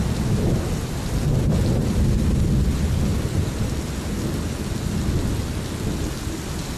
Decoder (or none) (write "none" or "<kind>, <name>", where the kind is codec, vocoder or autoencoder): none